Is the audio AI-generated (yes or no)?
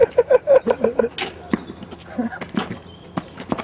no